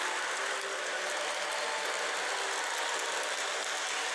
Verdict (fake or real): real